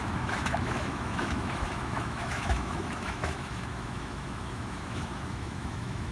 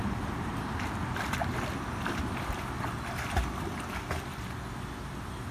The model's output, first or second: first